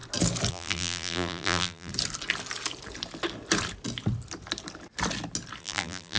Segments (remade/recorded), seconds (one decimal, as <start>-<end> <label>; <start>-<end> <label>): 0.0-0.5 recorded; 0.5-1.9 remade; 1.9-5.6 recorded; 5.6-6.2 remade